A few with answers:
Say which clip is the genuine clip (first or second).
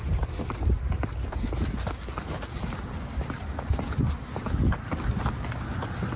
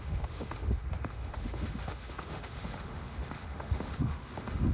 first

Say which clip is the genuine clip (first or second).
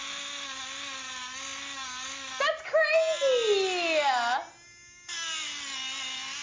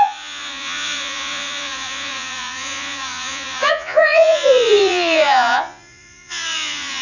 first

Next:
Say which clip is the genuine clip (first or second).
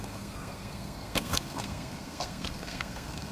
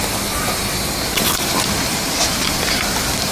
second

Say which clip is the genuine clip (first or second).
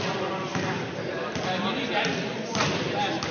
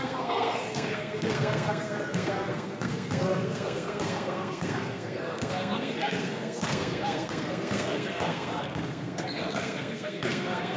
first